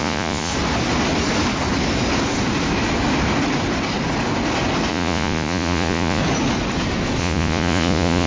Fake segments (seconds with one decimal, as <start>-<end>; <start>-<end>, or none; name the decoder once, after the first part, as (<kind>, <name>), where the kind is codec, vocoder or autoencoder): 0.0-0.5 (vocoder, Vocos); 4.9-6.2; 7.2-8.3